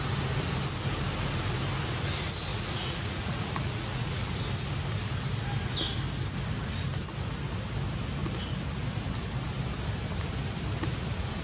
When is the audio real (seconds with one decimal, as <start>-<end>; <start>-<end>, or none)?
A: 0.0-2.5; 4.3-11.4